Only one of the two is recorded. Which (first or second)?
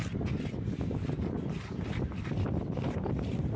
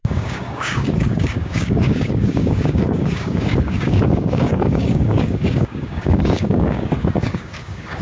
first